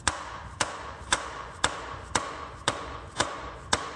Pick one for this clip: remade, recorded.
remade